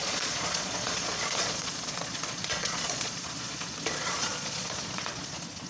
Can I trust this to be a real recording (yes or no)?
no